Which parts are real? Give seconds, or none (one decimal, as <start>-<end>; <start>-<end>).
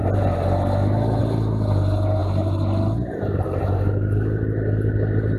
0.0-5.4